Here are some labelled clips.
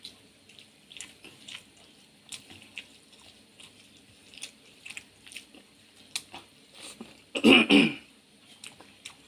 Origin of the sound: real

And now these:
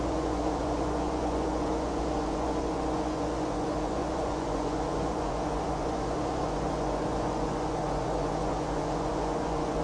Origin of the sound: fake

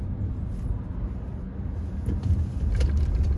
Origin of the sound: real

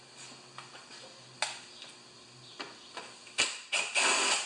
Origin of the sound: real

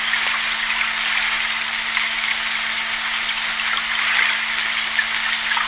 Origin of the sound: real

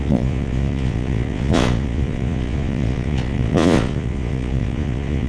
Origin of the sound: fake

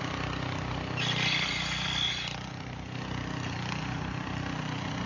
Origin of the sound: real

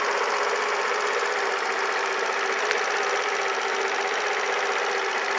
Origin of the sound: real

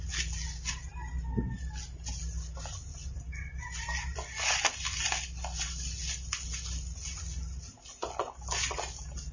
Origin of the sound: real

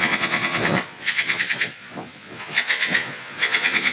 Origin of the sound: fake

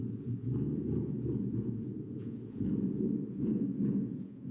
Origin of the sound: fake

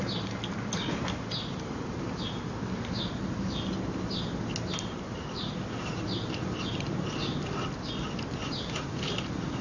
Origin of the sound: real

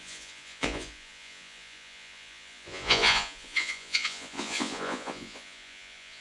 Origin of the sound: fake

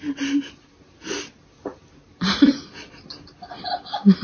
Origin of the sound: real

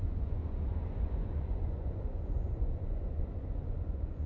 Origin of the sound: fake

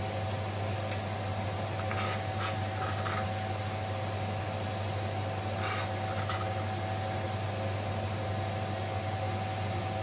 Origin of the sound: real